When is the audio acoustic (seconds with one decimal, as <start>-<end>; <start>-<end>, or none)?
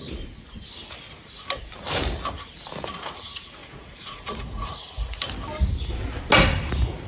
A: 0.0-3.6; 5.2-7.1